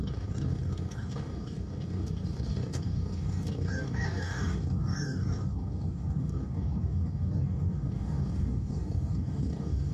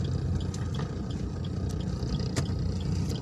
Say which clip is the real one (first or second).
second